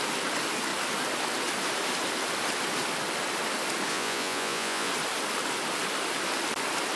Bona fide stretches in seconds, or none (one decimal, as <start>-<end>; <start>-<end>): 0.0-3.9; 4.9-7.0